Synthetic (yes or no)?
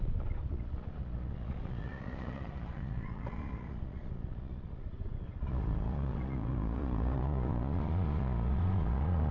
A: yes